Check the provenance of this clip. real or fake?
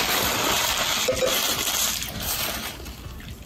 real